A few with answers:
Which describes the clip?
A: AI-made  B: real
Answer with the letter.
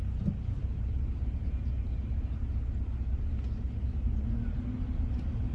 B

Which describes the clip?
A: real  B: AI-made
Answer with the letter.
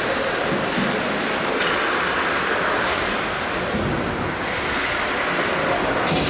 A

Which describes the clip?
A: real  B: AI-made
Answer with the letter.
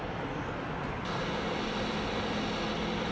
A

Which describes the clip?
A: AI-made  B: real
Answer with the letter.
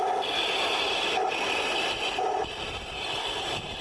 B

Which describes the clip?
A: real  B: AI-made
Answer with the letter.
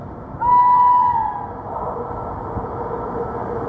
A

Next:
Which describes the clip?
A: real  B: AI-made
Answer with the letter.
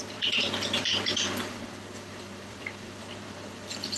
B